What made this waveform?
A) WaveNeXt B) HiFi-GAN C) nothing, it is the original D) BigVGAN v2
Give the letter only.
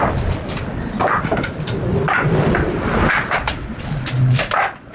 C